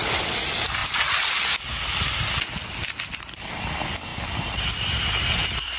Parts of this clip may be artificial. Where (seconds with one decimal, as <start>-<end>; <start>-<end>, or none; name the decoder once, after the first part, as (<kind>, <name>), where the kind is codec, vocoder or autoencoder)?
none